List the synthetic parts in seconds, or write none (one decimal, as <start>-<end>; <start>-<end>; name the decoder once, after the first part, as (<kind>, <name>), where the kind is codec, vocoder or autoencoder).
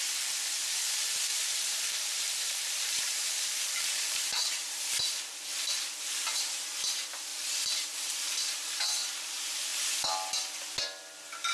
1.3-5.3 (vocoder, BigVGAN v2); 7.3-8.9